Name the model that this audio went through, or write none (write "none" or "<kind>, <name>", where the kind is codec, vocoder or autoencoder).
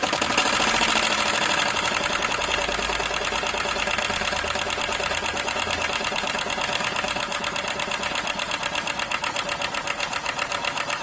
none